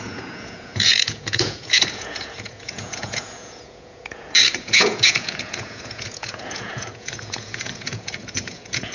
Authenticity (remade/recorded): remade